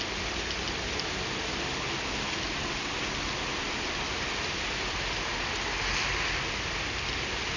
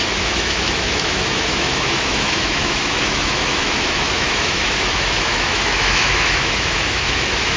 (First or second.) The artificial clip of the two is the second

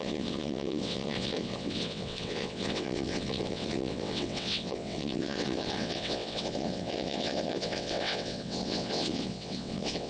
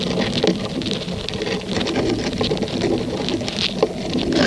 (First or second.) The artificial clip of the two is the first